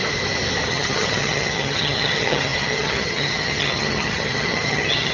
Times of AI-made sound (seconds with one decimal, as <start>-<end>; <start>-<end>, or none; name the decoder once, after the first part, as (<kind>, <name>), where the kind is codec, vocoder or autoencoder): 0.7-5.1 (vocoder, HiFi-GAN)